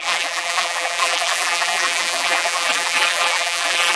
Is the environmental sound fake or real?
fake